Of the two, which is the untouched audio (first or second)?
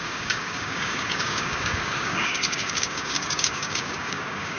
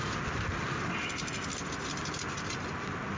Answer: second